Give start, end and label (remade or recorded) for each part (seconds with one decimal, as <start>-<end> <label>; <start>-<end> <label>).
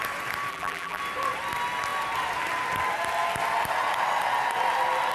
0.0-0.5 recorded; 0.5-1.0 remade; 1.0-5.1 recorded